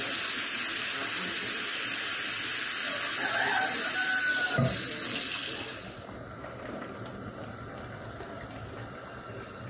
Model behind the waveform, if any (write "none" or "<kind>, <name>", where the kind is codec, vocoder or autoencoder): none